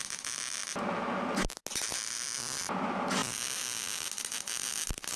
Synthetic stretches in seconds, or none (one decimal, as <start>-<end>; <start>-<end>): none